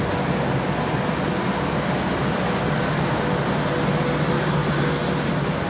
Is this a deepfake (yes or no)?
no